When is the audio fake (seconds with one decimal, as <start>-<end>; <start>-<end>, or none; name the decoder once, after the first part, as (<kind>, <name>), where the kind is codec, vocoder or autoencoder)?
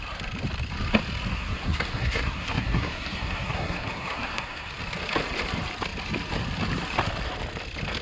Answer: 1.3-4.7 (codec, SNAC)